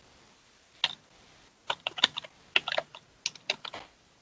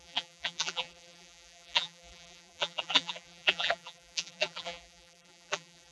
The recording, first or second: first